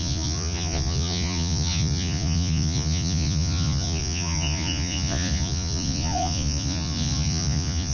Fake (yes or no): yes